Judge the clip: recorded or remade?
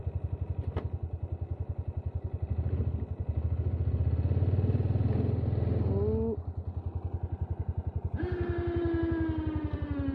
recorded